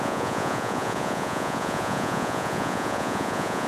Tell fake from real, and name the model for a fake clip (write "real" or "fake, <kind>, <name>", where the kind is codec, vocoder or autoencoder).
fake, vocoder, Vocos